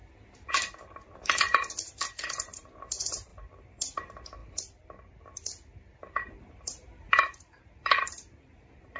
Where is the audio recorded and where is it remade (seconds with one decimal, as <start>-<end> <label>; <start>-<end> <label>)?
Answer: 0.0-0.5 recorded; 0.5-4.4 remade; 4.4-6.4 recorded; 6.4-9.0 remade